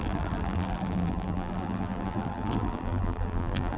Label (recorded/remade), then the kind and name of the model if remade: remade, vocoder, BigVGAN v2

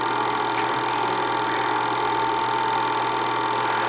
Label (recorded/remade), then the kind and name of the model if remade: recorded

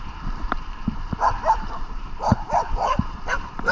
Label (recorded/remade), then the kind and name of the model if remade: remade, vocoder, BigVGAN v2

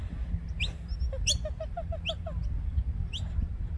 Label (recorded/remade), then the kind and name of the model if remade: recorded